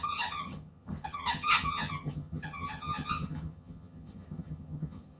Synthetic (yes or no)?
yes